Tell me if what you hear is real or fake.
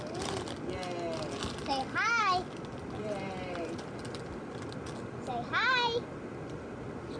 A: real